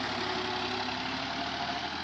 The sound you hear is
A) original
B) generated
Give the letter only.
A